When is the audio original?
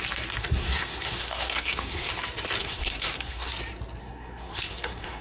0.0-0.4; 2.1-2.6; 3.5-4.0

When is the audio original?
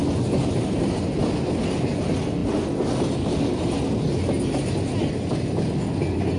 0.0-6.4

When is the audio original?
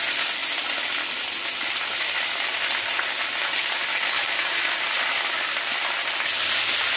0.0-4.2; 5.1-7.0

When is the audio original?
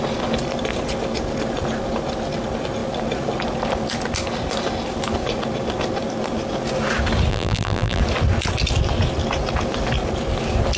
0.0-7.3; 8.0-10.8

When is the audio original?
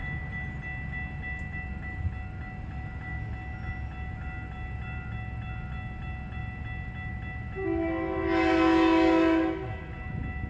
0.0-10.5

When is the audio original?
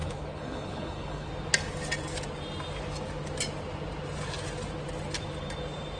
1.3-6.0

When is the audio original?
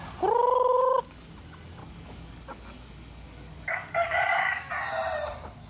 0.0-1.8; 4.7-5.7